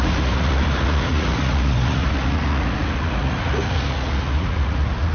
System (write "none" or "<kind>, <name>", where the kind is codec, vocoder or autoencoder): vocoder, Vocos